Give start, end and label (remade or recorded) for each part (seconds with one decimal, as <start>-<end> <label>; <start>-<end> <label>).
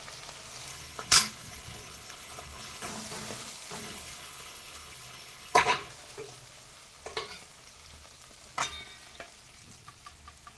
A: 0.0-0.7 recorded; 0.7-2.9 remade; 2.9-3.8 recorded; 3.8-5.9 remade; 5.9-10.6 recorded